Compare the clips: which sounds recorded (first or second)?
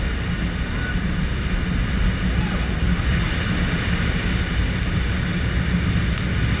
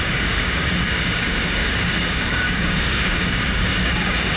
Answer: first